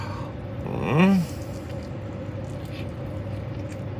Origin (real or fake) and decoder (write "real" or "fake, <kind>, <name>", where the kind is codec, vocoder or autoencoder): real